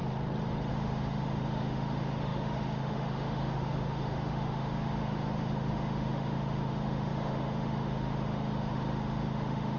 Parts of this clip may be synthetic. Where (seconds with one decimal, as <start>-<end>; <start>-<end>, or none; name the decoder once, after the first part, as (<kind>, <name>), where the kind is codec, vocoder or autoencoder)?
0.7-9.8 (autoencoder, DAC-VAE)